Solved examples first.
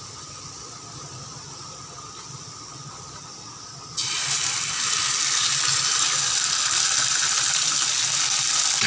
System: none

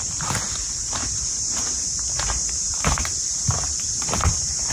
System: none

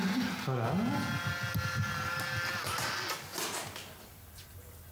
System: none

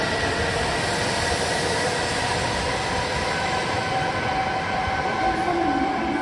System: vocoder, BigVGAN v2